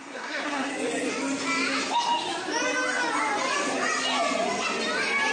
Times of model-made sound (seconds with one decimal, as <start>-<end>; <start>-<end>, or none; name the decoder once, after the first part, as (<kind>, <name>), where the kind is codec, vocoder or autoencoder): 0.0-0.7 (codec, SNAC)